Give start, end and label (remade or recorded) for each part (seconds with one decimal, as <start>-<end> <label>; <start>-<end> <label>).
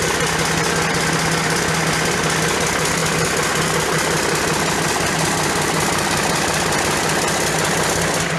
0.0-8.4 recorded